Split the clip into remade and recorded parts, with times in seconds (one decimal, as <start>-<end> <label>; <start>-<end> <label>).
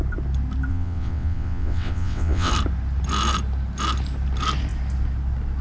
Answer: 0.0-0.7 recorded; 0.7-2.5 remade; 2.5-5.6 recorded